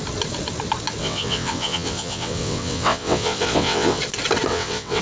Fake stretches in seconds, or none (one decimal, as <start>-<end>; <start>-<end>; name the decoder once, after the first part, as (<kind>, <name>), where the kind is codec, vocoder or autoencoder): 1.0-4.0 (vocoder, WaveNeXt); 4.5-5.0